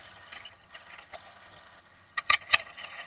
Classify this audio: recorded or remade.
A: remade